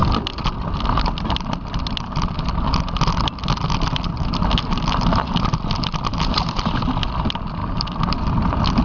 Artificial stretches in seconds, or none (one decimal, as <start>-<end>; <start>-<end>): none